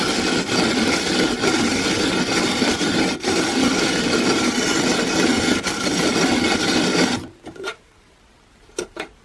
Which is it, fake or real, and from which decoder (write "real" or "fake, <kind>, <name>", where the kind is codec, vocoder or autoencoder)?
real